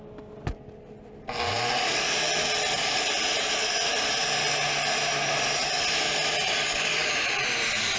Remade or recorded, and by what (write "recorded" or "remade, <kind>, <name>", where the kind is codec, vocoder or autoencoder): recorded